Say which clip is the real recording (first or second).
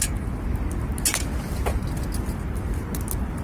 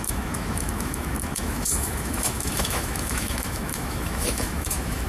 first